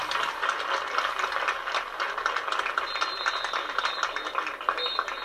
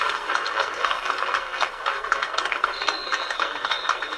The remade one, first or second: second